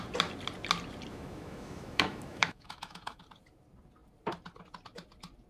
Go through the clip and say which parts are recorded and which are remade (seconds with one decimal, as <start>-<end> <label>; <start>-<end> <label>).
0.0-1.1 recorded; 1.1-3.2 remade; 3.2-5.5 recorded